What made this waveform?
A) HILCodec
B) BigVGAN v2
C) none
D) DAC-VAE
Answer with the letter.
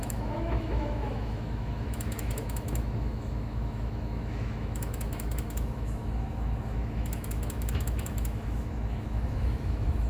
D